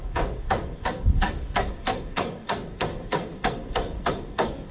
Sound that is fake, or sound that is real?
fake